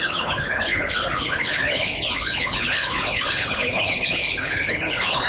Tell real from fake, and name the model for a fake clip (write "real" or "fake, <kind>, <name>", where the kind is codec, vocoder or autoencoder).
fake, codec, HILCodec